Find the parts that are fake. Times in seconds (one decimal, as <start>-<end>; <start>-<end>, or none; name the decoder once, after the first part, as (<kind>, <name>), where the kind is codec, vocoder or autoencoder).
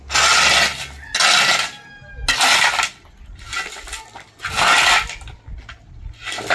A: none